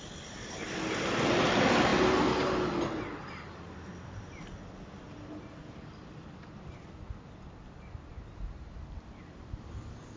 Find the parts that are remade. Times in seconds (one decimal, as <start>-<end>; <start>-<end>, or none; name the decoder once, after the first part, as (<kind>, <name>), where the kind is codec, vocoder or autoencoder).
none